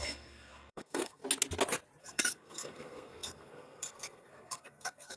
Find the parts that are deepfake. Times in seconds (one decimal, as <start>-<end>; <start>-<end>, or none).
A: 0.0-1.2; 2.0-5.2

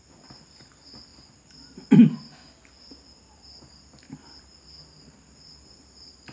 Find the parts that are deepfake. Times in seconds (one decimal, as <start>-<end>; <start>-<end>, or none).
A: none

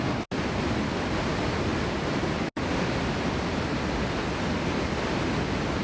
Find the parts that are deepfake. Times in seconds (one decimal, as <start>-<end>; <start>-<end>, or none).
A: none

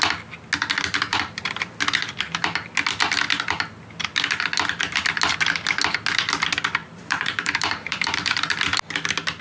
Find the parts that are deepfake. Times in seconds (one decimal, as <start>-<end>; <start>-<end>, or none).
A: 1.1-1.8; 6.8-8.4